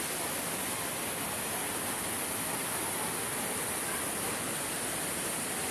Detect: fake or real real